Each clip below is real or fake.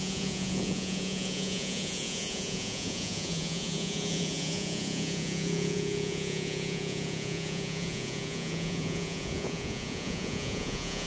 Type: fake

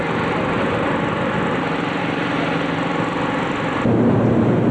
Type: real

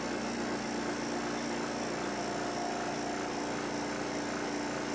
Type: real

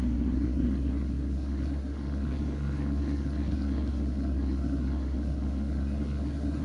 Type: fake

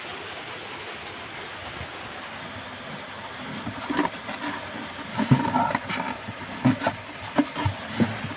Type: real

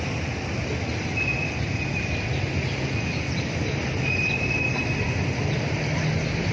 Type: real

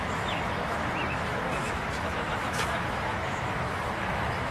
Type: fake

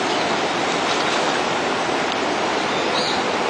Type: real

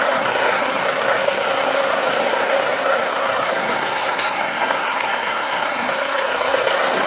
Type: fake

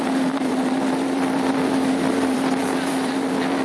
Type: fake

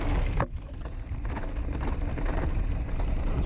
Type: real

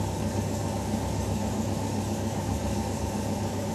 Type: fake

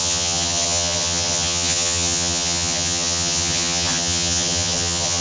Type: fake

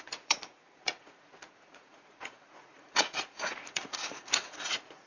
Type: fake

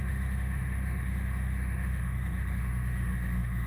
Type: fake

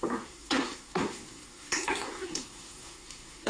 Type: fake